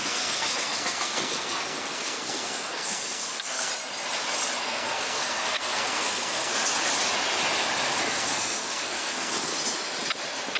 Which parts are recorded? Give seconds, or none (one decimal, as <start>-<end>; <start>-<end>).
3.7-4.6; 6.5-8.0; 9.5-10.6